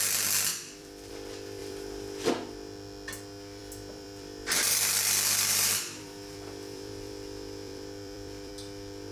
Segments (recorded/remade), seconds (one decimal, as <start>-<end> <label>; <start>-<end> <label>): 0.0-0.5 recorded; 0.5-1.1 remade; 1.1-1.6 recorded; 1.6-2.3 remade; 2.3-3.6 recorded; 3.6-8.5 remade; 8.5-9.1 recorded